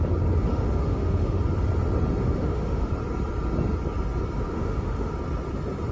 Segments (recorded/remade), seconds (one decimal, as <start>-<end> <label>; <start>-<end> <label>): 0.0-0.5 recorded; 0.5-1.4 remade; 1.4-2.2 recorded; 2.2-2.9 remade; 2.9-4.5 recorded; 4.5-5.1 remade; 5.1-5.9 recorded